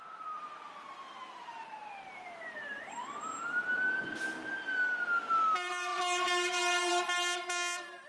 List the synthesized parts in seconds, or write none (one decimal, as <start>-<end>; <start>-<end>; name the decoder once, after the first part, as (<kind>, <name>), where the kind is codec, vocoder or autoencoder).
0.0-3.8 (vocoder, BigVGAN v2)